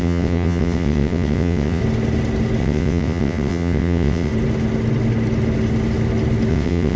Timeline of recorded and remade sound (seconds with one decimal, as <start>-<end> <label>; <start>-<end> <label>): 0.0-1.8 remade; 1.8-2.6 recorded; 2.6-4.3 remade; 4.3-6.5 recorded; 6.5-7.0 remade